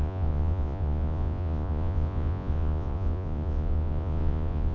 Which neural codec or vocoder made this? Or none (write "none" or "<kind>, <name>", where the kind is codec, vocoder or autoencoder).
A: vocoder, Vocos